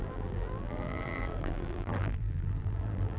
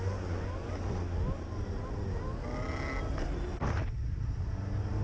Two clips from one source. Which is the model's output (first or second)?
first